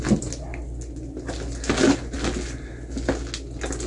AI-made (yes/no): no